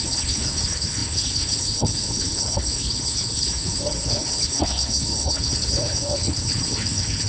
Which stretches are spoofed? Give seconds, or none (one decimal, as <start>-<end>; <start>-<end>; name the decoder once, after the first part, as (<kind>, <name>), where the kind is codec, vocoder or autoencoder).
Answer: 0.0-7.3 (codec, HILCodec)